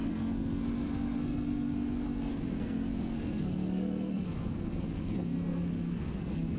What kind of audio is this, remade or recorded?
remade